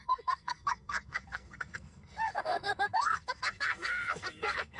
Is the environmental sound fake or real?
fake